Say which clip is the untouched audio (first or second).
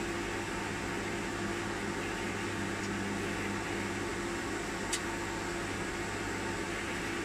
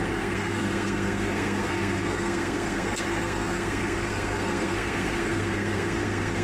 first